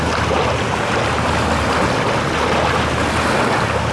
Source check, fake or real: real